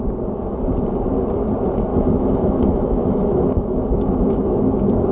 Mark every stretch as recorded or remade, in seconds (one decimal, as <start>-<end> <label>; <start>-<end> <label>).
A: 0.0-1.9 recorded; 1.9-5.1 remade